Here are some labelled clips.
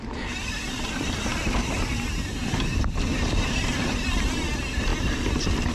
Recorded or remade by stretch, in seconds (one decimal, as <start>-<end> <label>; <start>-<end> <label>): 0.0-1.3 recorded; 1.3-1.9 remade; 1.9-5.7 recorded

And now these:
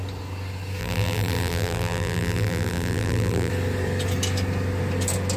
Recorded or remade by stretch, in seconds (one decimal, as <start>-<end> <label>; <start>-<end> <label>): 0.0-0.8 recorded; 0.8-3.5 remade; 3.5-5.4 recorded

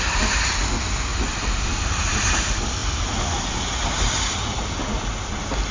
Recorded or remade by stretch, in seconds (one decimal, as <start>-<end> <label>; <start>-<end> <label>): 0.0-1.1 recorded; 1.1-2.0 remade; 2.0-5.7 recorded

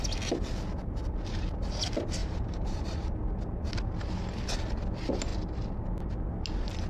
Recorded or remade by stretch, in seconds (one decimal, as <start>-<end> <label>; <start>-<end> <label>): 0.0-2.2 recorded; 2.2-3.1 remade; 3.1-5.3 recorded; 5.3-6.0 remade; 6.0-6.9 recorded